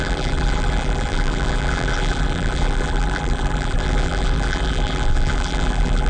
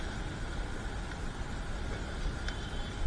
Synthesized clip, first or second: first